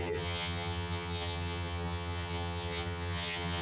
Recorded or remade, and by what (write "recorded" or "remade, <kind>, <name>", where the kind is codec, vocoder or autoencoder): remade, vocoder, HiFi-GAN